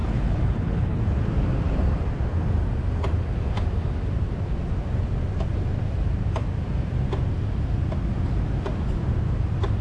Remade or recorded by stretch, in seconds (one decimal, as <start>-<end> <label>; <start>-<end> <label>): 0.0-1.0 remade; 1.0-9.8 recorded